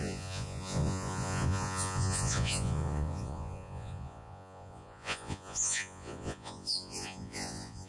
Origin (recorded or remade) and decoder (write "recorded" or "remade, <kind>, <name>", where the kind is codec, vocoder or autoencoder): remade, vocoder, Vocos